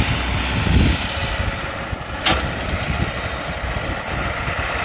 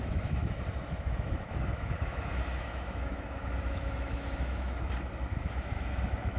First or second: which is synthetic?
second